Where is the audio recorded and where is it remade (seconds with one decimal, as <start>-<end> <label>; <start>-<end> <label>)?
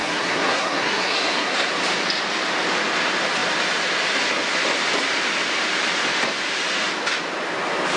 0.0-1.7 remade; 1.7-8.0 recorded